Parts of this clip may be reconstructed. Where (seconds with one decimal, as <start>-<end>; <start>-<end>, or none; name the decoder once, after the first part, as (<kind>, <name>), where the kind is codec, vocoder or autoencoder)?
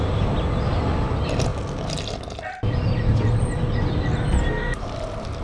none